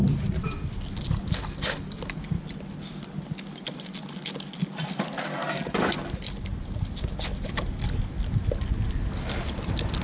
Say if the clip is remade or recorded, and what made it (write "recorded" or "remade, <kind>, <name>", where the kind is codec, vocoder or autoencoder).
recorded